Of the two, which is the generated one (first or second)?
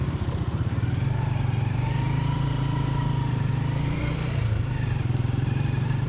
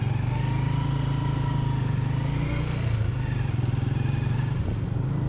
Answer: first